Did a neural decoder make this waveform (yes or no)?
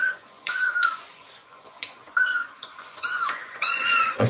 yes